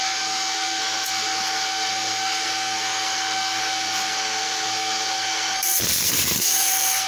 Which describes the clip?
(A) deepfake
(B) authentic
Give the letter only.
A